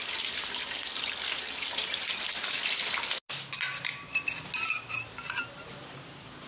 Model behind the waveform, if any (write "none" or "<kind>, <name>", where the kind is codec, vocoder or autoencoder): none